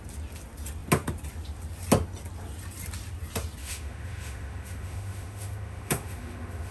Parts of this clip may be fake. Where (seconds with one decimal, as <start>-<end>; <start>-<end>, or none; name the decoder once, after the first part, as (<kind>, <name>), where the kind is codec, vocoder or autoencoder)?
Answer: 3.6-6.7 (autoencoder, DAC-VAE)